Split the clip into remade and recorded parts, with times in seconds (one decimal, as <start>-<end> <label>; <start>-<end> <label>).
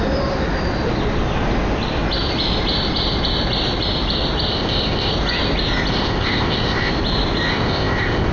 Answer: 0.0-4.5 recorded; 4.5-5.1 remade; 5.1-5.9 recorded; 5.9-6.9 remade; 6.9-7.5 recorded; 7.5-8.3 remade